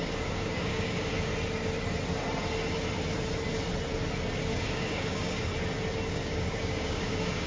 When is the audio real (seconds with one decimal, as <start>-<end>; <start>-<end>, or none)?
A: 1.3-4.4; 5.5-6.1